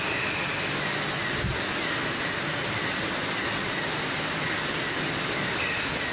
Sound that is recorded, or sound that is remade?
recorded